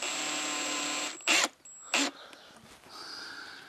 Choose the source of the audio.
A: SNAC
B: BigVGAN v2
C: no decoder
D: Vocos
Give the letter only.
C